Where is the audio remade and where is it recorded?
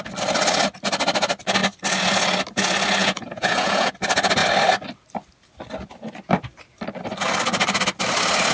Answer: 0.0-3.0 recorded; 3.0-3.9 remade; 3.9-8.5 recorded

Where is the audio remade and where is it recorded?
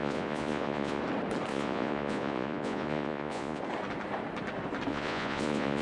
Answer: 0.0-1.0 remade; 1.0-1.5 recorded; 1.5-3.6 remade; 3.6-4.9 recorded; 4.9-5.8 remade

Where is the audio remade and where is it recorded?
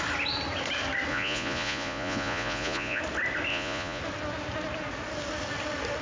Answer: 0.0-1.1 recorded; 1.1-3.0 remade; 3.0-3.5 recorded; 3.5-4.0 remade; 4.0-6.0 recorded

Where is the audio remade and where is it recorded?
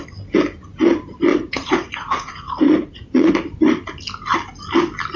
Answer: 0.0-1.3 recorded; 1.3-3.3 remade; 3.3-5.2 recorded